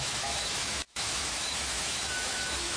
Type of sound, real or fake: fake